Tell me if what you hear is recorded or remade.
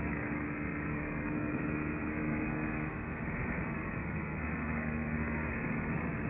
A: remade